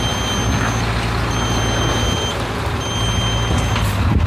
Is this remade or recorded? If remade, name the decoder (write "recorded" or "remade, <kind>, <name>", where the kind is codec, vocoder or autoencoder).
recorded